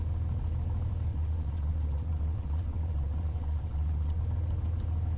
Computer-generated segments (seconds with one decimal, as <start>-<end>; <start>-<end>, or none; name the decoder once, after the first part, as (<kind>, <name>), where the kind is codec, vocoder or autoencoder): 1.1-4.2 (vocoder, WaveNeXt)